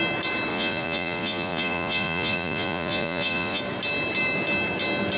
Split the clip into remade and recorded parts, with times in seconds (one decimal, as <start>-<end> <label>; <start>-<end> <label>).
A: 0.0-0.5 recorded; 0.5-3.6 remade; 3.6-5.2 recorded